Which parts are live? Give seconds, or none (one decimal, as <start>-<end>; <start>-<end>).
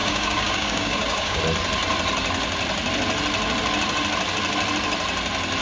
1.4-5.6